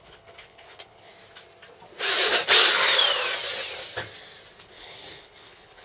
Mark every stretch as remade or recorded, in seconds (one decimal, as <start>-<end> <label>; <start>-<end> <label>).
0.0-1.1 remade; 1.1-4.6 recorded; 4.6-5.8 remade